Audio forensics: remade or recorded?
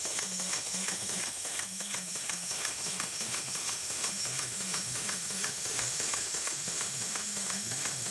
remade